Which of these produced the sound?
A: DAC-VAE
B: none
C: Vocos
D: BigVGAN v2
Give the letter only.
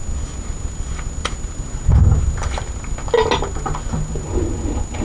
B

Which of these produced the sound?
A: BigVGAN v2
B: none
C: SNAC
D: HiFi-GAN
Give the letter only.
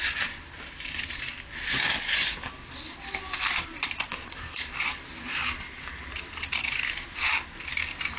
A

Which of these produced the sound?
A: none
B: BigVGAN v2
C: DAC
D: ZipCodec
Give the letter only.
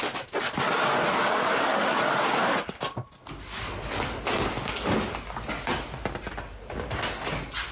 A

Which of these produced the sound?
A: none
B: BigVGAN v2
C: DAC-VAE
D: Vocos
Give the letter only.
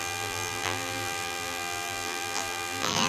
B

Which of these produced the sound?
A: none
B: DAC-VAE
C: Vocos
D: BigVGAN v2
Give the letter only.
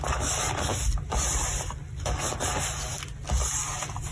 A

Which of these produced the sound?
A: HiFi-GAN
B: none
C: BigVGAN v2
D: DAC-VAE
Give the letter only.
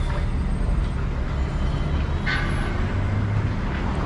B